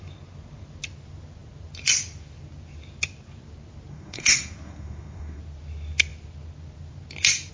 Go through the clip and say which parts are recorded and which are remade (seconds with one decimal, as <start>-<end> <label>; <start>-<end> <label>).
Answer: 0.0-3.9 recorded; 3.9-5.4 remade; 5.4-7.5 recorded